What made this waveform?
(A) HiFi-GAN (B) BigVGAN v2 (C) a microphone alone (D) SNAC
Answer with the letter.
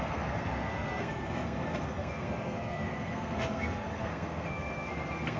D